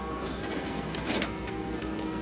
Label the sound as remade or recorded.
remade